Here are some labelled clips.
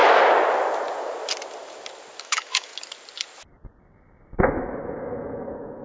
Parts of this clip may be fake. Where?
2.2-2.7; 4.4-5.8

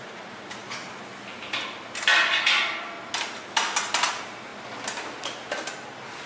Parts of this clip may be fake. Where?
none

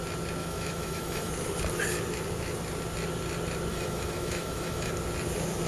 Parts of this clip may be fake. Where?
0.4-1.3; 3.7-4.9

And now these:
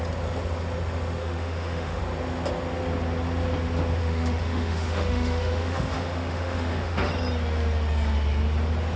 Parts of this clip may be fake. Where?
1.2-2.0; 4.0-7.1